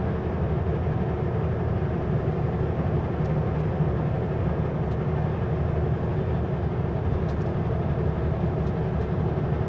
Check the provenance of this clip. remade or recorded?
recorded